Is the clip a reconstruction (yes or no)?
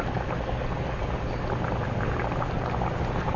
no